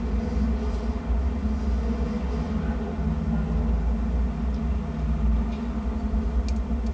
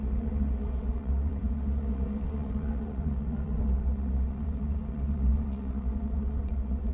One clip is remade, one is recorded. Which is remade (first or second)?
second